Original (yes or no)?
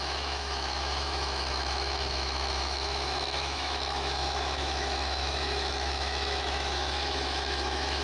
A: no